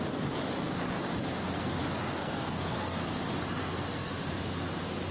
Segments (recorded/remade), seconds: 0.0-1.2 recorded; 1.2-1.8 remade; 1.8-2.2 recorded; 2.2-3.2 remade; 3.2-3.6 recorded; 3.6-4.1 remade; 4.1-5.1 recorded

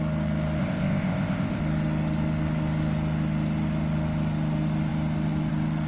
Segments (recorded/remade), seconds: 0.0-0.6 recorded; 0.6-1.6 remade; 1.6-5.9 recorded

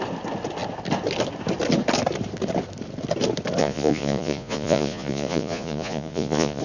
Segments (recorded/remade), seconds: 0.0-3.6 recorded; 3.6-6.6 remade

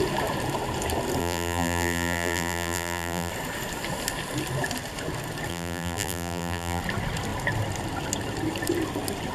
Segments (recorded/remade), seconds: 0.0-1.2 recorded; 1.2-3.3 remade; 3.3-5.5 recorded; 5.5-6.8 remade; 6.8-9.3 recorded